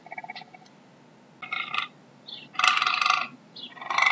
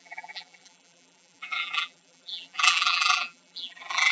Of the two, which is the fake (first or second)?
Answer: second